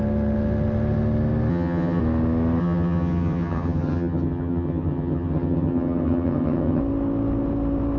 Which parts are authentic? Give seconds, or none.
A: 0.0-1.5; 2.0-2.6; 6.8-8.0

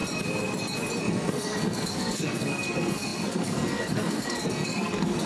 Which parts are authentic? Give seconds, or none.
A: 0.0-1.0

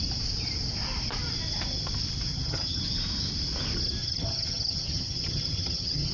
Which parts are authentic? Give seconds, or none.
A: 0.0-2.3; 2.8-4.0

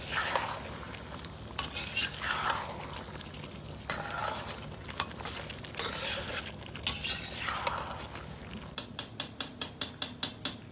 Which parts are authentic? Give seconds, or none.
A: 0.0-10.7

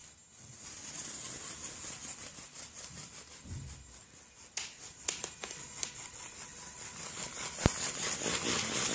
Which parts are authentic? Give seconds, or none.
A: 0.0-8.9

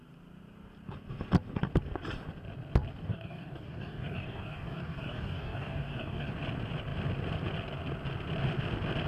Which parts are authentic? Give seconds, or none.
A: 0.0-3.1; 6.3-9.1

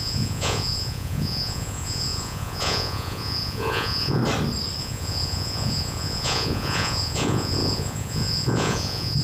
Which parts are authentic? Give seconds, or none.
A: 4.2-4.8